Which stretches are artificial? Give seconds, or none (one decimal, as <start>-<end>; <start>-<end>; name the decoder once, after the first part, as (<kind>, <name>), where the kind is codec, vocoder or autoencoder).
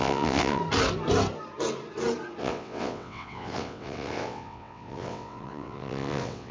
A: 0.0-0.6 (vocoder, WaveNeXt); 2.4-6.5